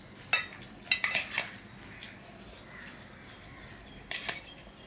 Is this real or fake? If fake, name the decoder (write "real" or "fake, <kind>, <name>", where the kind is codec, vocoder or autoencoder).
real